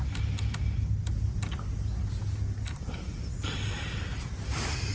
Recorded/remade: recorded